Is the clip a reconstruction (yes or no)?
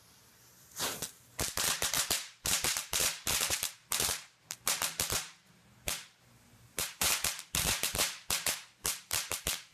yes